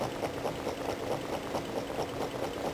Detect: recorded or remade recorded